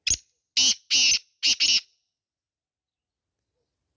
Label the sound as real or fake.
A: real